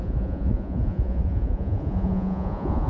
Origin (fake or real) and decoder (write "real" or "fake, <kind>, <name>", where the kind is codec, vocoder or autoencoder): fake, vocoder, Vocos